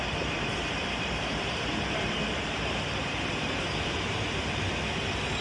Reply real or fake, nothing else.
fake